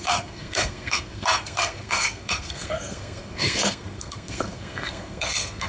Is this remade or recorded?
remade